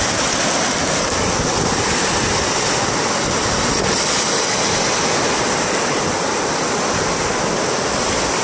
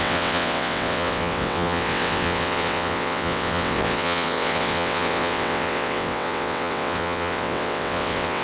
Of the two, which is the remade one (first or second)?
second